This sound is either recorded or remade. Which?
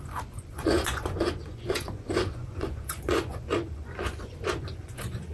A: remade